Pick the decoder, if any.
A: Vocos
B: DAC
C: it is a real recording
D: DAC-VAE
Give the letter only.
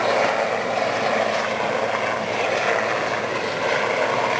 C